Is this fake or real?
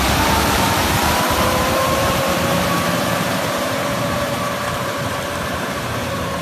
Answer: fake